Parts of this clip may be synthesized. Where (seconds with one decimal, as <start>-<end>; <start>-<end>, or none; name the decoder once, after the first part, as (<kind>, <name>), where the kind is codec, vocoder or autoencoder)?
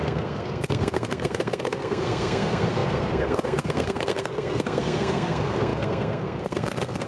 0.0-7.1 (codec, SNAC)